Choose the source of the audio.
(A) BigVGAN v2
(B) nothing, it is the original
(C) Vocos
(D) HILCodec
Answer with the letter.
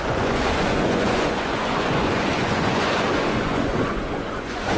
C